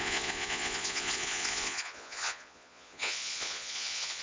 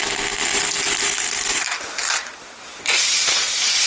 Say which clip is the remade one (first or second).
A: first